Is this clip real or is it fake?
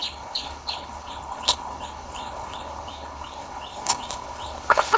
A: fake